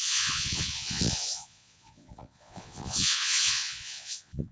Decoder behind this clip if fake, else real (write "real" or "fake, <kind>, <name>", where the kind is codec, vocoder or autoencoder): fake, vocoder, Vocos